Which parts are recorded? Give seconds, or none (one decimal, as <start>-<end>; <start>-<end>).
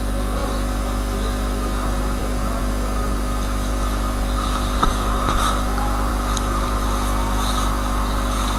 0.0-8.6